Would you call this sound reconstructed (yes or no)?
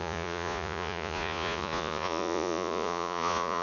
yes